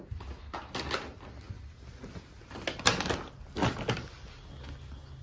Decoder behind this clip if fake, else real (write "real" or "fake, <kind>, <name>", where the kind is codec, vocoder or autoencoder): real